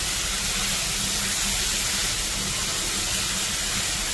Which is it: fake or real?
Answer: real